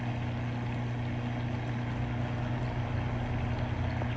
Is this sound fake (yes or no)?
no